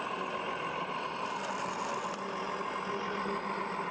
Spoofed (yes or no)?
no